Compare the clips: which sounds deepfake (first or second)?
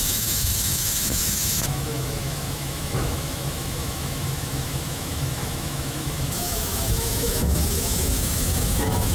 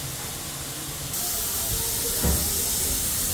first